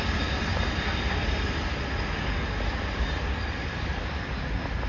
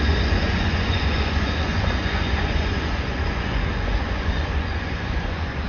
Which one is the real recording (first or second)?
first